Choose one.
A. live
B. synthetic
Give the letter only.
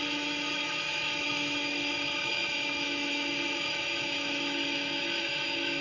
B